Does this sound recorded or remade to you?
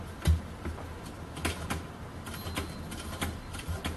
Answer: recorded